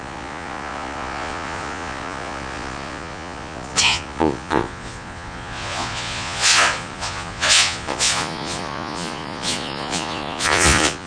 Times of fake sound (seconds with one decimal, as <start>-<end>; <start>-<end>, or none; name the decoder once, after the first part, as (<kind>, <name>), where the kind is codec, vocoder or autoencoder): 0.0-11.1 (vocoder, Vocos)